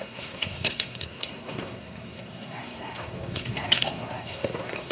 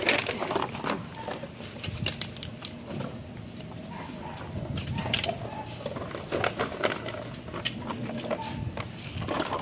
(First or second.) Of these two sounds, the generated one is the first